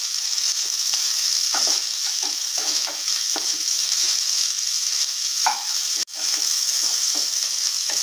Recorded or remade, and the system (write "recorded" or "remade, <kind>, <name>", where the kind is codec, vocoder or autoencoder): remade, autoencoder, DAC-VAE